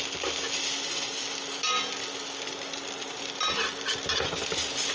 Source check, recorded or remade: recorded